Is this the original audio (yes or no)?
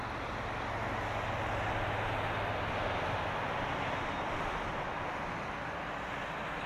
yes